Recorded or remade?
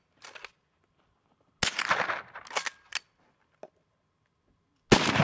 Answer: recorded